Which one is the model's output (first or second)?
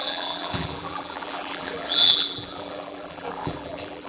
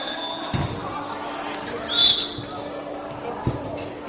first